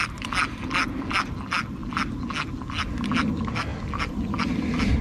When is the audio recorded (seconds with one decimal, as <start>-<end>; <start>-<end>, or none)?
0.0-5.0